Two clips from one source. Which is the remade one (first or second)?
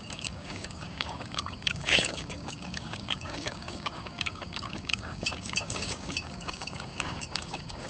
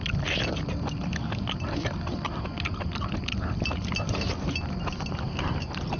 first